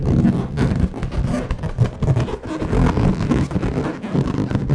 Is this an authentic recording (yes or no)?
yes